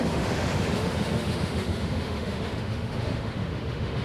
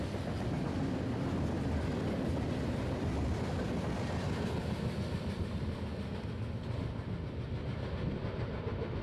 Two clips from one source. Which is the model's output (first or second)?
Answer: first